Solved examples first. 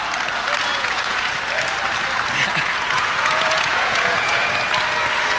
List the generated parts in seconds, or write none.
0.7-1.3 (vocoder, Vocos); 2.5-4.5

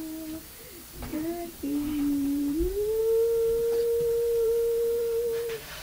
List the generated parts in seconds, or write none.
1.1-3.0 (vocoder, BigVGAN v2); 3.8-5.0

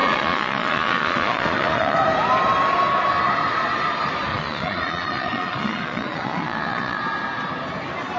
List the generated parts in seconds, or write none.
0.0-2.0 (vocoder, Vocos); 4.3-7.0